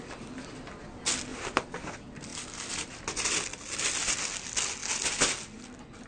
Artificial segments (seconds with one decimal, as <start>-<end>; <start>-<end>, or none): none